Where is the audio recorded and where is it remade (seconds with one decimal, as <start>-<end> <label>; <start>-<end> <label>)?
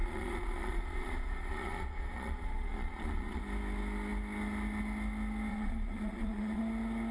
0.0-3.4 remade; 3.4-5.5 recorded; 5.5-6.6 remade; 6.6-7.1 recorded